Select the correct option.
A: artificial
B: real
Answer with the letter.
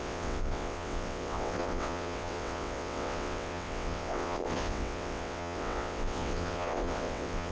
A